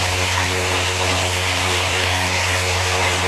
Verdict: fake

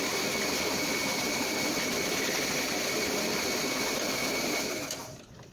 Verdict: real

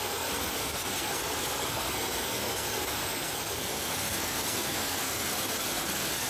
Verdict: fake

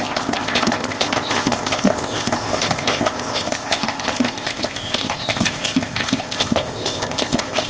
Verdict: fake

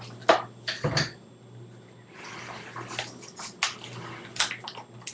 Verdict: real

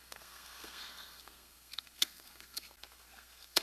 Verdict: fake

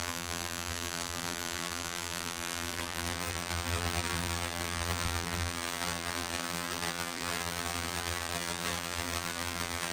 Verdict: fake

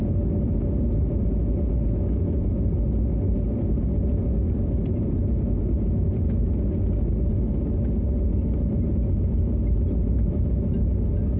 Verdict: real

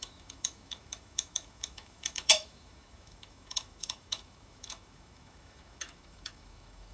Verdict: fake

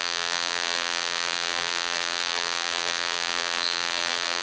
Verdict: fake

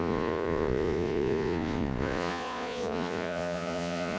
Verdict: fake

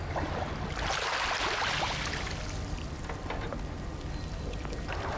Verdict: real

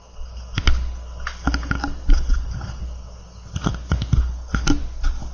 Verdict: real